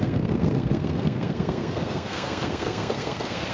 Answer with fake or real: fake